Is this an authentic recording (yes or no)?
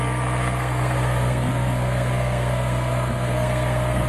no